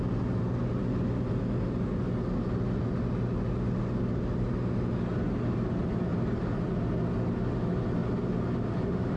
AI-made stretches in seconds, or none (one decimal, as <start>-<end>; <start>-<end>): 6.1-6.6; 8.0-9.2